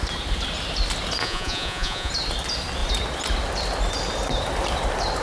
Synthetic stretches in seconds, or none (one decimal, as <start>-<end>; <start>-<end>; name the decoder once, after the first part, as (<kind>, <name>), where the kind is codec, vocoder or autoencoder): 1.2-2.1 (vocoder, Vocos)